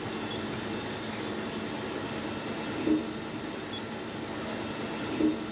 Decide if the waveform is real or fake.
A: real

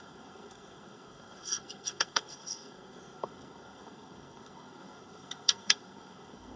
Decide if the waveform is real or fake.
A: fake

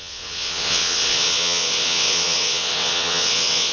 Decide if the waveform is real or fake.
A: fake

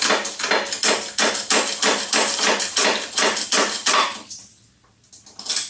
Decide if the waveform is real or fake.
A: real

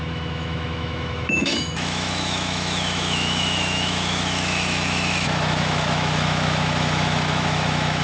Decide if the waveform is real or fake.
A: fake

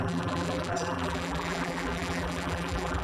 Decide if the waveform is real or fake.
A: fake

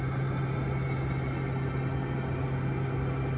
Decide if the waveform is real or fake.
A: real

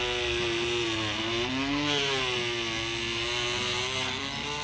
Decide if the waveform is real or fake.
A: real